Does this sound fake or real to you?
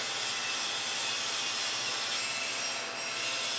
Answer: real